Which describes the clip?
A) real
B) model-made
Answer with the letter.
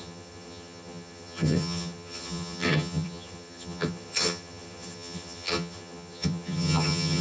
B